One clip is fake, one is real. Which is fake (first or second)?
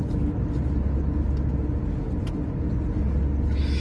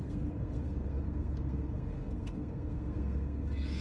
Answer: second